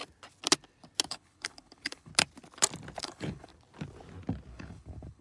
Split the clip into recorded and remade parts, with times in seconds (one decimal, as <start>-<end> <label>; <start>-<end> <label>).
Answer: 0.0-1.1 recorded; 1.1-2.1 remade; 2.1-3.0 recorded; 3.0-3.5 remade; 3.5-4.5 recorded; 4.5-5.2 remade